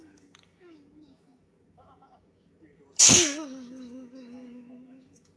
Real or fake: fake